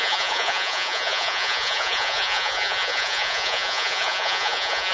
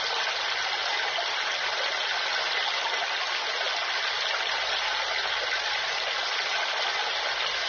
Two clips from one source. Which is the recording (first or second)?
second